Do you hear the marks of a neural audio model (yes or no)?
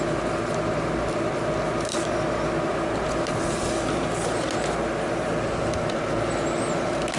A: no